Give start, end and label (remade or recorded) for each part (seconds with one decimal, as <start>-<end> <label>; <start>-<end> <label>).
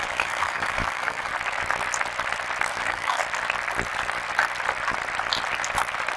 0.0-1.3 remade; 1.3-2.7 recorded; 2.7-3.2 remade; 3.2-6.2 recorded